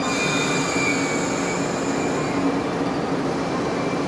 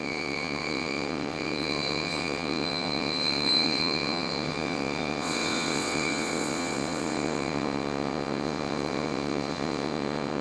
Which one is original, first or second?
first